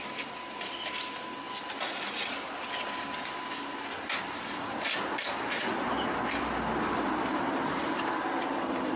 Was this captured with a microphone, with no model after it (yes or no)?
yes